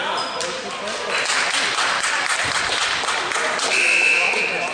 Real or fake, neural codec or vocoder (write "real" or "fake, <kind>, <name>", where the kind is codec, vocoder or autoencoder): fake, vocoder, BigVGAN v2